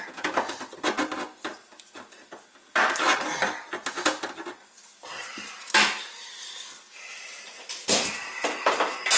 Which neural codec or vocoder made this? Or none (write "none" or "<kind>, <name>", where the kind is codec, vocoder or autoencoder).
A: none